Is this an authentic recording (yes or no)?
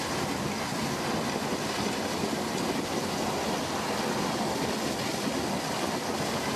yes